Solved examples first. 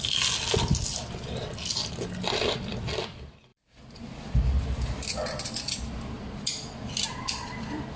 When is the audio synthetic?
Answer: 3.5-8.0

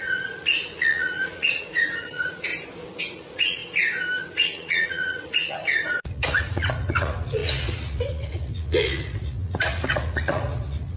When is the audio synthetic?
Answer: 0.0-2.5; 3.0-3.6; 4.2-11.0